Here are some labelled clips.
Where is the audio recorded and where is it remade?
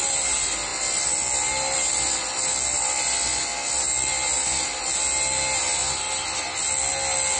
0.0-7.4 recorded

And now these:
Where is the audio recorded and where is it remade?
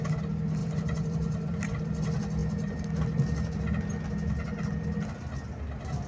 0.0-0.6 recorded; 0.6-1.8 remade; 1.8-6.1 recorded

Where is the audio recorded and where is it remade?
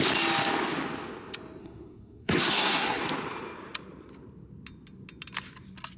0.0-1.6 recorded; 1.6-3.0 remade; 3.0-6.0 recorded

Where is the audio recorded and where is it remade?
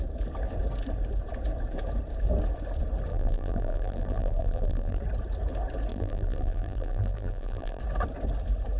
0.0-3.1 recorded; 3.1-5.0 remade; 5.0-5.9 recorded; 5.9-7.8 remade; 7.8-8.8 recorded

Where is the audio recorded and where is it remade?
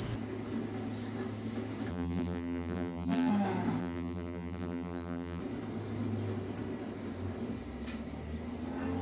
0.0-1.9 recorded; 1.9-3.3 remade; 3.3-3.8 recorded; 3.8-5.4 remade; 5.4-9.0 recorded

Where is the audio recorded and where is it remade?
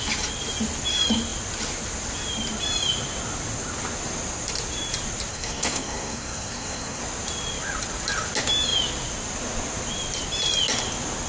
0.0-5.3 recorded; 5.3-7.0 remade; 7.0-11.3 recorded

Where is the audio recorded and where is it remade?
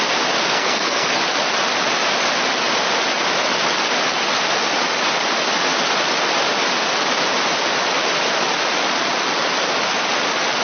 0.0-0.5 recorded; 0.5-1.2 remade; 1.2-10.6 recorded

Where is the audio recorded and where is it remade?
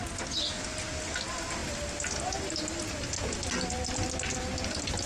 0.0-5.1 recorded